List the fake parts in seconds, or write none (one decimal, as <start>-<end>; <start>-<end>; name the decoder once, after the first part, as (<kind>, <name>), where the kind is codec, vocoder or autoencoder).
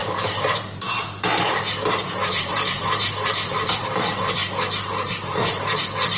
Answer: 0.0-4.4 (vocoder, BigVGAN v2); 5.4-6.2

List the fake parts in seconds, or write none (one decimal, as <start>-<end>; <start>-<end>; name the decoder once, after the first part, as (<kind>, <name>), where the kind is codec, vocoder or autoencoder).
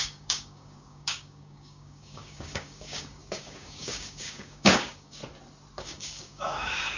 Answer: 0.0-5.2 (codec, DAC); 5.8-7.0